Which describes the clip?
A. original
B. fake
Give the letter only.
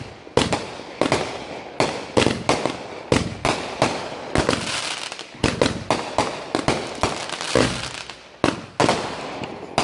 A